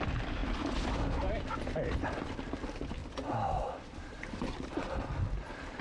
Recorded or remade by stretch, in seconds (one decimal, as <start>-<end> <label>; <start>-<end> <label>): 0.0-0.4 recorded; 0.4-1.1 remade; 1.1-3.0 recorded; 3.0-5.8 remade